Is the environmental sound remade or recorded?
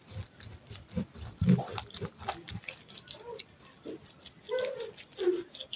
recorded